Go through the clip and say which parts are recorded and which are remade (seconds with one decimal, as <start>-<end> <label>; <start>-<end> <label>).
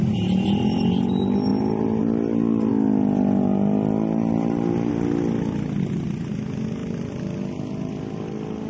0.0-8.7 recorded